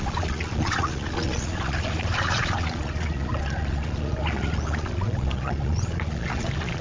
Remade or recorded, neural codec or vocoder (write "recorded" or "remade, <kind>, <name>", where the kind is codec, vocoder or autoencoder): remade, vocoder, Vocos